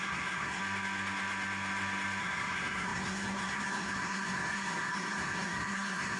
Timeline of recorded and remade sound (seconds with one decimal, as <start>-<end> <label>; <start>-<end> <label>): 0.0-0.6 remade; 0.6-2.2 recorded; 2.2-6.2 remade